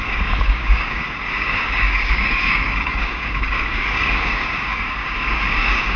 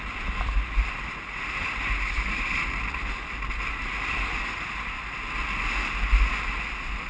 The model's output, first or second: first